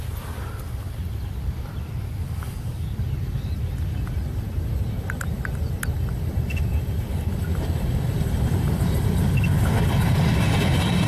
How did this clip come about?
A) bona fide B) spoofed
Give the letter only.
A